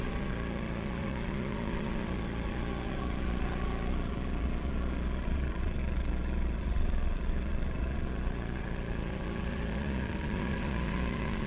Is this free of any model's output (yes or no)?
no